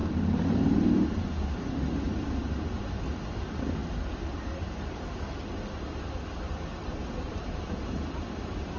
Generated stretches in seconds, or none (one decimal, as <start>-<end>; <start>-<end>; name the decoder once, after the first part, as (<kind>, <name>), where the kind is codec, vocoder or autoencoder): 6.7-7.6 (vocoder, BigVGAN v2)

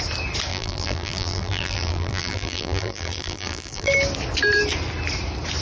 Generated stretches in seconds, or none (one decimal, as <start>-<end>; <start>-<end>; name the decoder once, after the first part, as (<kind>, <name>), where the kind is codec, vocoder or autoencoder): 0.5-3.9 (vocoder, BigVGAN v2)